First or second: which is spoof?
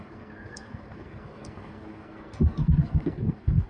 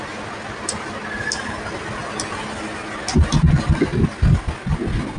first